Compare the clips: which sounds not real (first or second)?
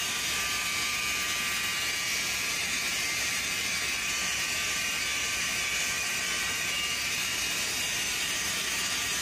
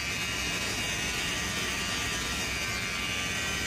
first